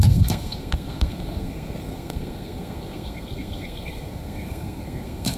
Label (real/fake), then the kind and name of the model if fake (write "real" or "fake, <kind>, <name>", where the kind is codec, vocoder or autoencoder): fake, codec, SNAC